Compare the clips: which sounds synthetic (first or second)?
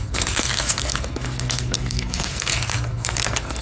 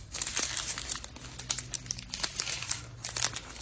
first